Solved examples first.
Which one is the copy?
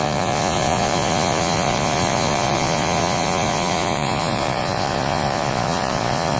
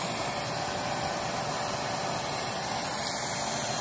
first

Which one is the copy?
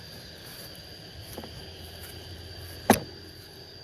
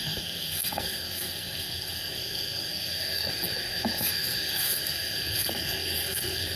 second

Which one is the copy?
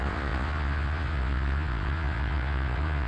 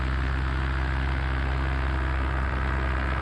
first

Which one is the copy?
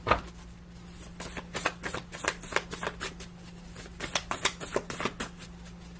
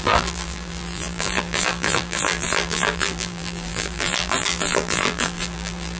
second